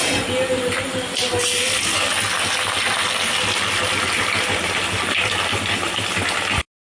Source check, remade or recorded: recorded